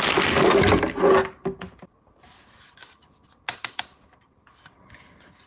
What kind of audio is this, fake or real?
real